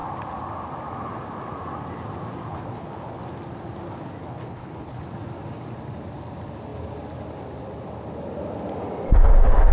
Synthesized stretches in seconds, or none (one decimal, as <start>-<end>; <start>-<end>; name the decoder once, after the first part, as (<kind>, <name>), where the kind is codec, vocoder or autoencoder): 2.5-3.2 (codec, HILCodec); 4.2-5.0